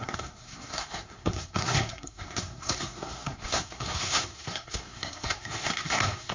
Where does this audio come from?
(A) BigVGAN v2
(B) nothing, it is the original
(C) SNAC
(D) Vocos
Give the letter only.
C